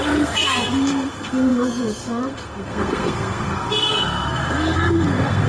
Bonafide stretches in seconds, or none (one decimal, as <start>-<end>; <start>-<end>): none